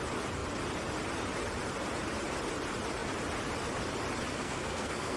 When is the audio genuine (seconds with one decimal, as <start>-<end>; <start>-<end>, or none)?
0.0-4.3